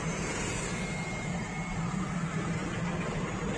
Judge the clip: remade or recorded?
recorded